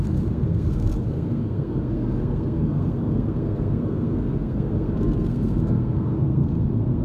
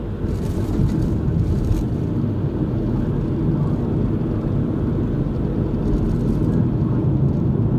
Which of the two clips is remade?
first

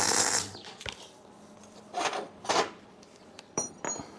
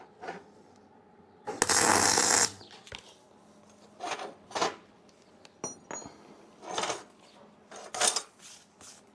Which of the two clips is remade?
first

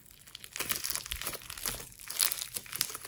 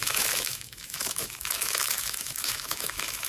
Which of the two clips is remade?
second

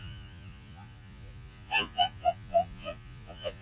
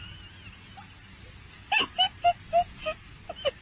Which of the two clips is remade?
first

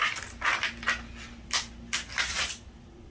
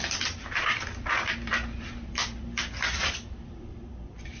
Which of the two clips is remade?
second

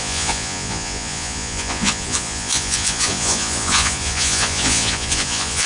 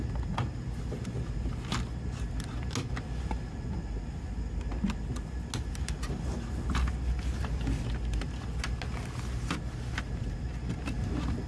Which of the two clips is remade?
first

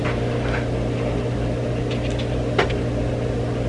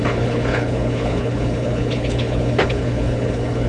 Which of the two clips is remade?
second